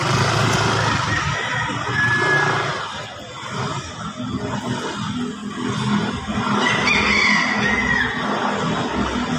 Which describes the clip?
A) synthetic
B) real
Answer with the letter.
B